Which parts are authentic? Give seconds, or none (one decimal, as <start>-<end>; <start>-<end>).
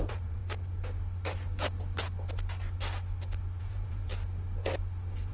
0.4-3.6; 4.1-5.3